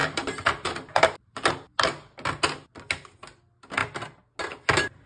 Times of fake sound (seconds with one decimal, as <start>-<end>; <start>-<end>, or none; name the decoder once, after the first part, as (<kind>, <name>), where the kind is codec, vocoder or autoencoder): 0.0-1.5 (vocoder, BigVGAN v2)